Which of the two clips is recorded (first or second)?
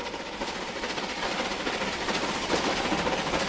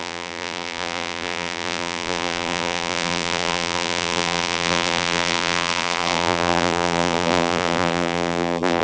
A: first